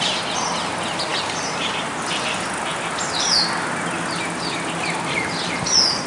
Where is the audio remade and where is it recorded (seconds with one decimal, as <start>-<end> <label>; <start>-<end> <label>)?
0.0-6.1 recorded